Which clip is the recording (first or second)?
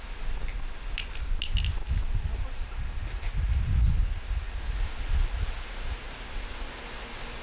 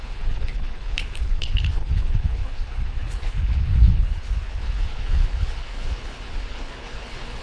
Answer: first